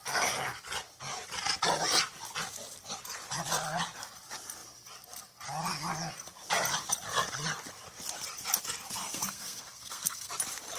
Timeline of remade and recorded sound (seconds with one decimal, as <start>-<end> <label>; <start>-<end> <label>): 0.0-9.0 recorded; 9.0-10.3 remade; 10.3-10.8 recorded